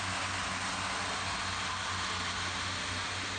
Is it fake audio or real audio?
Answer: real